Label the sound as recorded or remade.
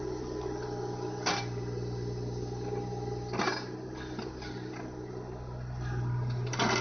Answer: recorded